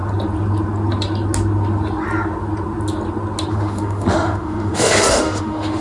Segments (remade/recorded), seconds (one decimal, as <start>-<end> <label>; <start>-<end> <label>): 0.0-3.5 recorded; 3.5-5.8 remade

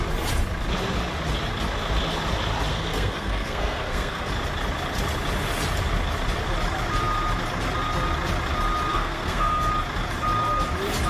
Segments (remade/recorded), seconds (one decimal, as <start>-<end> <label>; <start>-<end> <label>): 0.0-2.7 recorded; 2.7-4.3 remade; 4.3-8.9 recorded; 8.9-9.7 remade; 9.7-11.1 recorded

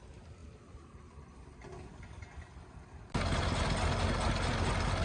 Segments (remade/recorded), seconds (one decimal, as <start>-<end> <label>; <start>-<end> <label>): 0.0-5.0 recorded

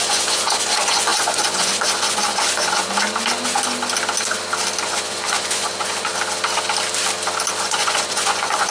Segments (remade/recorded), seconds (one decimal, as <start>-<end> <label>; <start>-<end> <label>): 0.0-2.8 remade; 2.8-4.8 recorded; 4.8-6.1 remade; 6.1-7.6 recorded; 7.6-8.7 remade

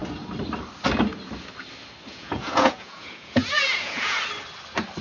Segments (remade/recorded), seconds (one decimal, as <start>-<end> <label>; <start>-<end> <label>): 0.0-2.1 recorded; 2.1-4.2 remade; 4.2-5.0 recorded

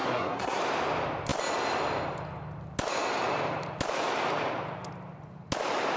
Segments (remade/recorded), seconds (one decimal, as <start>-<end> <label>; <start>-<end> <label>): 0.0-0.6 remade; 0.6-6.0 recorded